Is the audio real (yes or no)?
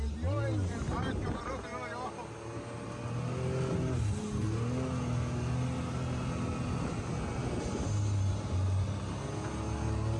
yes